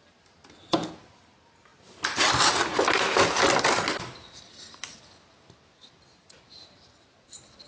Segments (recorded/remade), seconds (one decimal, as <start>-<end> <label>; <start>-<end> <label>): 0.0-7.7 recorded